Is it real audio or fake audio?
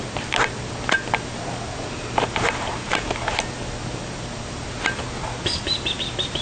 real